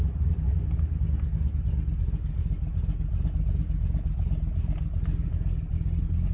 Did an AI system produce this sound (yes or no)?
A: no